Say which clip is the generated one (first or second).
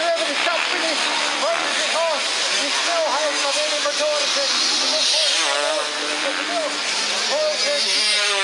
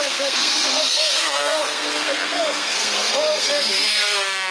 second